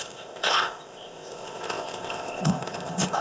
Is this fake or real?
fake